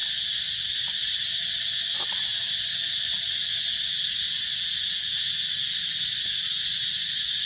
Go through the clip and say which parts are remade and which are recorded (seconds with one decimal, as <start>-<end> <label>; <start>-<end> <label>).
0.0-7.5 recorded